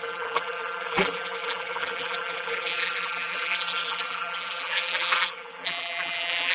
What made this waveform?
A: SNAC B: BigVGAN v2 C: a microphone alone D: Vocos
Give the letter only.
B